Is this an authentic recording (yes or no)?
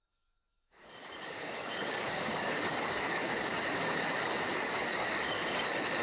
no